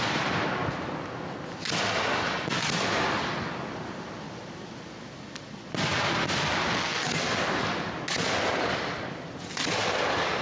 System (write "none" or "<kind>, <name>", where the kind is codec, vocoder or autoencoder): none